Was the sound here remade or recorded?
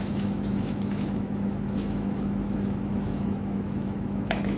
remade